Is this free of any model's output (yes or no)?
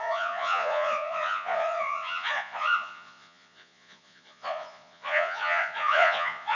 no